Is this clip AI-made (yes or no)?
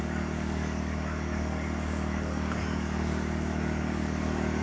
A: yes